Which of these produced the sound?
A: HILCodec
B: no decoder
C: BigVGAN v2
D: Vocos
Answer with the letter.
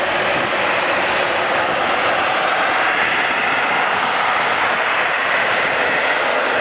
B